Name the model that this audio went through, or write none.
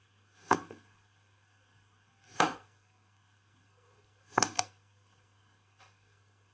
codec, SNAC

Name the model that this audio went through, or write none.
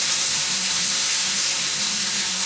codec, SNAC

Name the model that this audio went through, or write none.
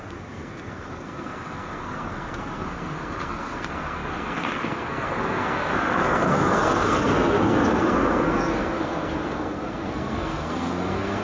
codec, SNAC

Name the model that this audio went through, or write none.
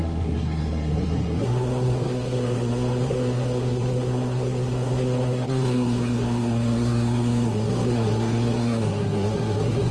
codec, SNAC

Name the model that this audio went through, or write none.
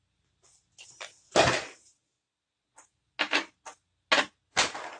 none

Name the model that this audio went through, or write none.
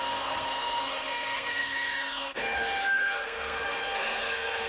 codec, SNAC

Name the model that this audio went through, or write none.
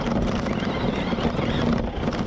none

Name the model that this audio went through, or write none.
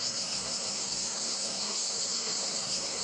codec, SNAC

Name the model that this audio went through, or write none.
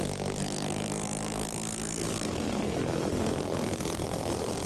codec, SNAC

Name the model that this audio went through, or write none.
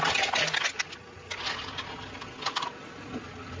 none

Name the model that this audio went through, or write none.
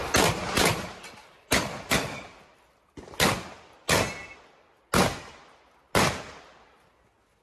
none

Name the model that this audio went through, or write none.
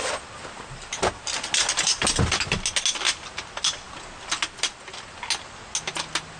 none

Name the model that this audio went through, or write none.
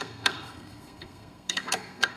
codec, SNAC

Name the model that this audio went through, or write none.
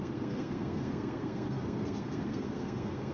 codec, SNAC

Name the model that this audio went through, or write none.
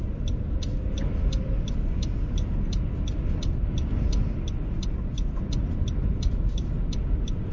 none